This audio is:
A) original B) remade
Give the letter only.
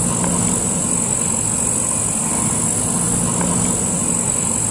A